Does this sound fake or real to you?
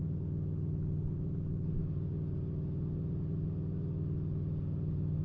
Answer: real